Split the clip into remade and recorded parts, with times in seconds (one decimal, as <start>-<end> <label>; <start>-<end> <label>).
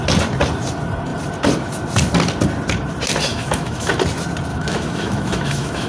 0.0-3.3 recorded; 3.3-3.9 remade; 3.9-4.5 recorded; 4.5-5.9 remade